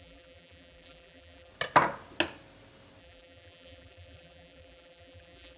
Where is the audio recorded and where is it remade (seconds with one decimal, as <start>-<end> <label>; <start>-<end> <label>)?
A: 0.0-1.5 remade; 1.5-3.0 recorded; 3.0-5.6 remade